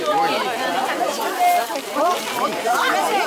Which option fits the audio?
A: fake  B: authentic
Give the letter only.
B